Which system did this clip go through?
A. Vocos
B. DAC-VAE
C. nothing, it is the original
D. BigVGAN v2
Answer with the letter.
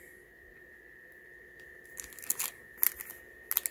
C